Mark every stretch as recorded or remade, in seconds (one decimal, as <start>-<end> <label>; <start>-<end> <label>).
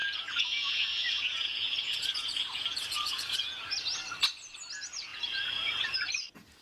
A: 0.0-3.7 remade; 3.7-5.1 recorded; 5.1-6.1 remade; 6.1-6.6 recorded